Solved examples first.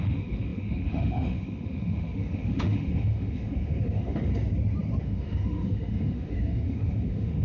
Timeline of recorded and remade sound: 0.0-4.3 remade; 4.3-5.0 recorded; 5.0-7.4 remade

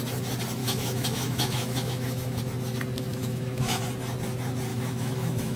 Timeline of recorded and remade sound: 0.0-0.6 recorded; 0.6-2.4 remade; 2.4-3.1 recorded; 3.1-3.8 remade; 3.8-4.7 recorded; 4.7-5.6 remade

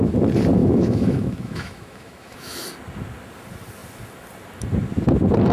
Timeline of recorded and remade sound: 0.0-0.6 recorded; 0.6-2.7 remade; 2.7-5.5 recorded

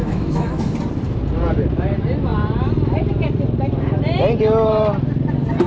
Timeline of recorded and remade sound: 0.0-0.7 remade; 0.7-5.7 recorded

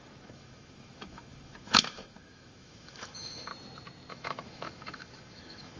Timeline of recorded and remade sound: 0.0-3.5 remade; 3.5-4.1 recorded; 4.1-5.8 remade

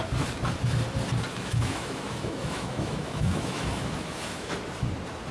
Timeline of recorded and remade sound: 0.0-1.3 recorded; 1.3-4.5 remade; 4.5-5.3 recorded

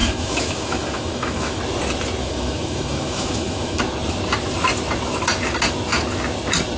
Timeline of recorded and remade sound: 0.0-1.6 remade; 1.6-2.2 recorded; 2.2-3.8 remade; 3.8-6.8 recorded

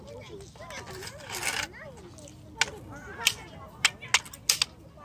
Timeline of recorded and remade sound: 0.0-5.0 recorded